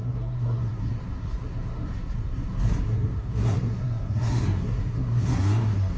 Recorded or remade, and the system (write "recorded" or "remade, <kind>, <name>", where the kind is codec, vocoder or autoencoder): remade, codec, SNAC